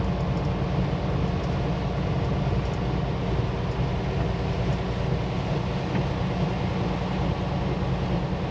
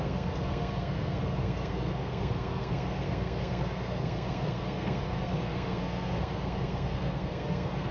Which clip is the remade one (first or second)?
second